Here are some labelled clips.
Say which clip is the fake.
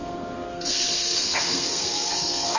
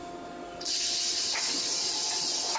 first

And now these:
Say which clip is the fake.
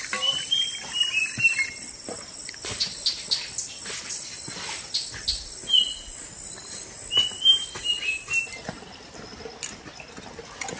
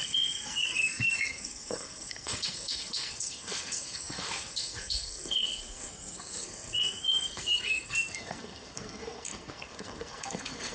second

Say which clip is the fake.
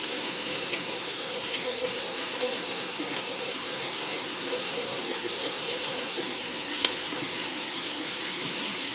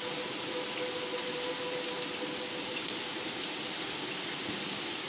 first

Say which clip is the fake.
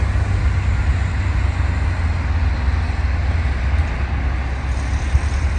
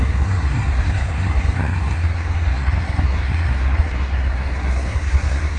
second